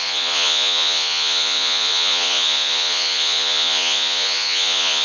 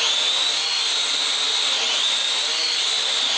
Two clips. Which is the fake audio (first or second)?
first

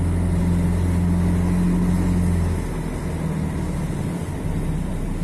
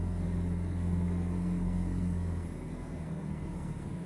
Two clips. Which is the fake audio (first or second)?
second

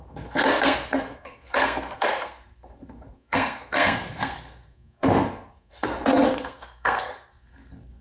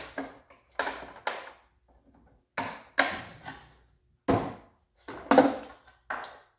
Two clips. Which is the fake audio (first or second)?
first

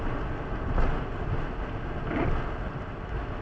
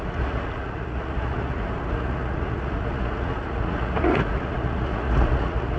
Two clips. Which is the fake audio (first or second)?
second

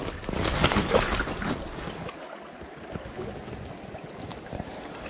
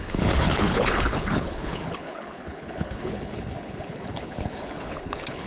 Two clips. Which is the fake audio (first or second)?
second